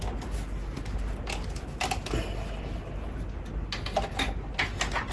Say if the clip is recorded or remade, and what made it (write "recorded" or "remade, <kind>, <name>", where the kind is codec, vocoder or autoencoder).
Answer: recorded